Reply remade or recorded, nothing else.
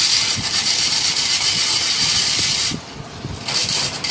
recorded